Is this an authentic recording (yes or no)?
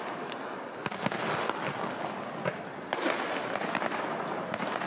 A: yes